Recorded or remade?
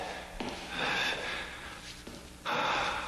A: recorded